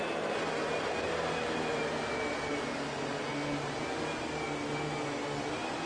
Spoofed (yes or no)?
no